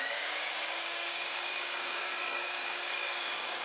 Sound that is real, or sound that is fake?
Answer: fake